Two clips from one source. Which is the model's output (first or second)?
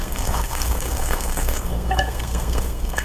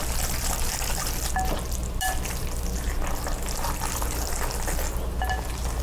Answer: first